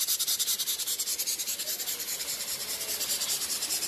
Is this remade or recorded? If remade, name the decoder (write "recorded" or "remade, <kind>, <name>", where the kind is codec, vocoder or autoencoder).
recorded